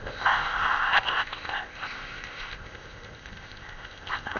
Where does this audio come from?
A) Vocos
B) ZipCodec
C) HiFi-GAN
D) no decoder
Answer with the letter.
B